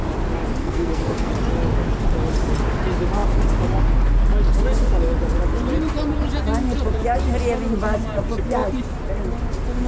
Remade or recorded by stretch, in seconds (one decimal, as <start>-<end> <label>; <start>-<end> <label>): 0.0-0.6 recorded; 0.6-1.3 remade; 1.3-9.9 recorded